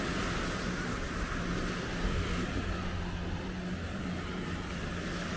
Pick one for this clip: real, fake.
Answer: real